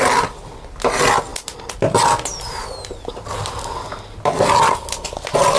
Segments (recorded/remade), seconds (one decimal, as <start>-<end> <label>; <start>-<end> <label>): 0.0-5.6 recorded